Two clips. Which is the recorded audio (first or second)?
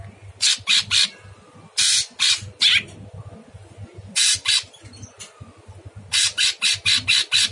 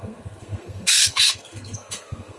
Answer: first